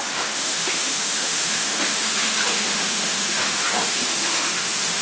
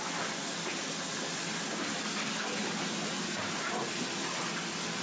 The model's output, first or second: first